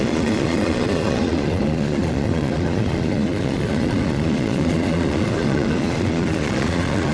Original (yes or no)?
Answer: no